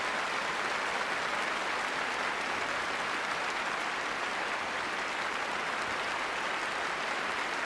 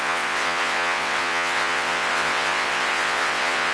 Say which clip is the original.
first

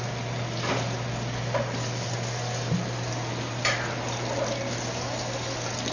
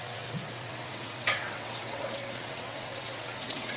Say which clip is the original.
first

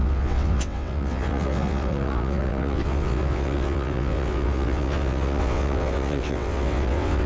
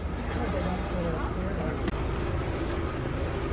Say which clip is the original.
second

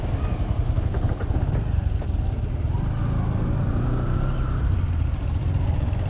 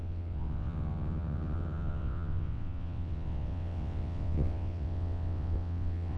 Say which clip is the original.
first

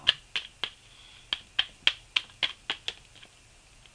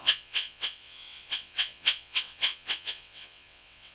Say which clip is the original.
first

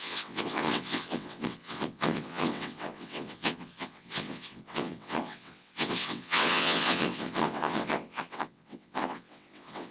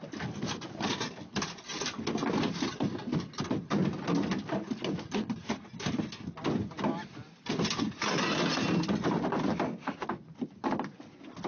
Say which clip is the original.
second